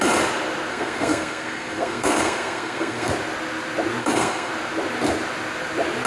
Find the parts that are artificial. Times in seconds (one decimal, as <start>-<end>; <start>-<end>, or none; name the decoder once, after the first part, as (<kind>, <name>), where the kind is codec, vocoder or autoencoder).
0.7-3.1 (codec, SNAC); 4.0-4.5